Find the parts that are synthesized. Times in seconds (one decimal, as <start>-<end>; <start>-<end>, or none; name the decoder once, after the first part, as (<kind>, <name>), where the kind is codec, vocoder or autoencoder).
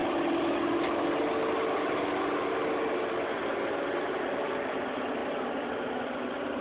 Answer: 4.0-5.2 (vocoder, BigVGAN v2)